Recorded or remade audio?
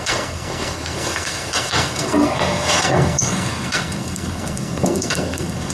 remade